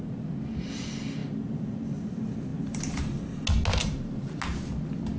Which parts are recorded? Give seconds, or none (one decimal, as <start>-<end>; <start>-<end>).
0.0-1.2; 1.9-2.5; 3.2-3.8; 4.4-5.2